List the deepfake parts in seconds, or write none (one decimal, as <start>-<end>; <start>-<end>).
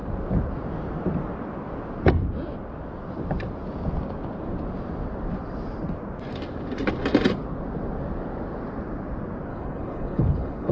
9.5-10.7